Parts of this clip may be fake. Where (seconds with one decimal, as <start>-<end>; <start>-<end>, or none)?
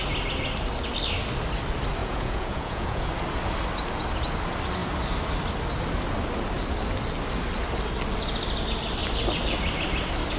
2.0-3.1